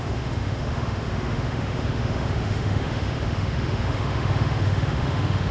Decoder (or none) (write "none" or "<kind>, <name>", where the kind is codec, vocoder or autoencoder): autoencoder, DAC-VAE